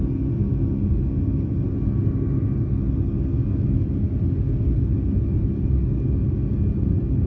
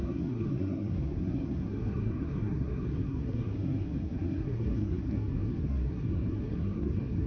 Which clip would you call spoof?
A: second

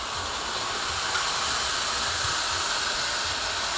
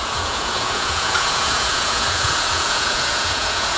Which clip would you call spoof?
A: second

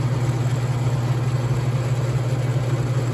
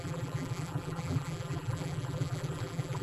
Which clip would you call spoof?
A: second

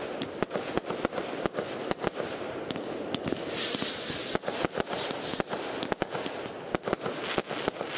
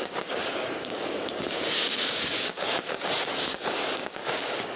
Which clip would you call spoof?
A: second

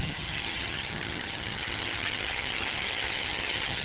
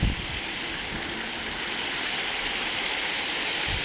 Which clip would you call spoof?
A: first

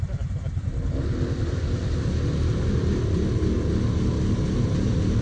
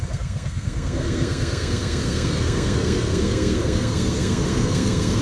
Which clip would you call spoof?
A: second